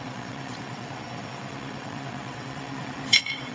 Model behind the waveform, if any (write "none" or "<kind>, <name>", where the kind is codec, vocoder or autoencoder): vocoder, WaveNeXt